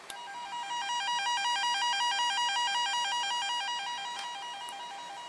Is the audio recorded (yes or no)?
yes